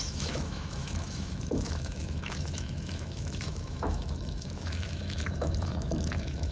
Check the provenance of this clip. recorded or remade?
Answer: remade